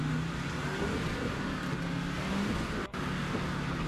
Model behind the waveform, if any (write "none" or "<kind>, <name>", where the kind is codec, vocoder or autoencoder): none